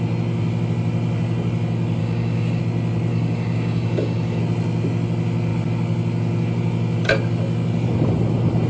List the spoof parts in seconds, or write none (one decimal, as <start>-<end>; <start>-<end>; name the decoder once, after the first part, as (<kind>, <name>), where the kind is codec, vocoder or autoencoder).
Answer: 2.0-2.6 (codec, DAC); 3.1-4.4